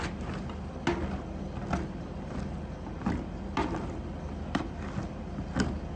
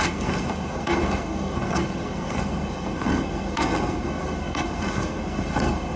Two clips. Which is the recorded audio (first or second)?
first